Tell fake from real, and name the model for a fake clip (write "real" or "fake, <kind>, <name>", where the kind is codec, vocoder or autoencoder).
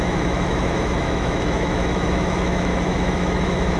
fake, autoencoder, DAC-VAE